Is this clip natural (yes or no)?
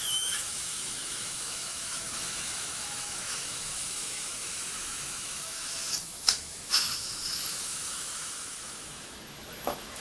no